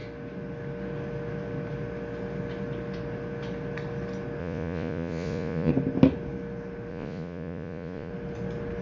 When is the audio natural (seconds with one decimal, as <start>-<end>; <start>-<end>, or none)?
0.0-4.4; 5.7-6.9; 8.1-8.8